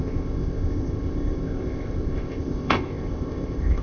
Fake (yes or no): yes